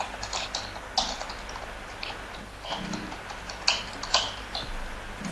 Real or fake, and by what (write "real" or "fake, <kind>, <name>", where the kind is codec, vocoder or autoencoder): real